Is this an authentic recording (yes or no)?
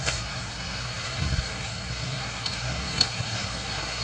no